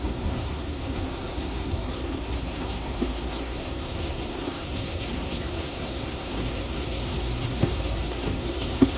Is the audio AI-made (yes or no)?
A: yes